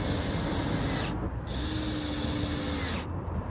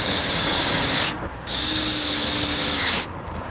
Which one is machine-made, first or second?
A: second